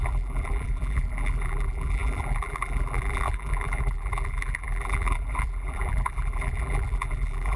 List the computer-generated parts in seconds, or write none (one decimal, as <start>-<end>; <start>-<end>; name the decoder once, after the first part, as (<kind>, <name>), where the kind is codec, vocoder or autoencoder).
0.0-7.6 (vocoder, BigVGAN v2)